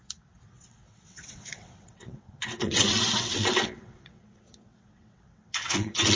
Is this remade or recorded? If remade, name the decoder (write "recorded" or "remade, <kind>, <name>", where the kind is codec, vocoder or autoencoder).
remade, vocoder, WaveNeXt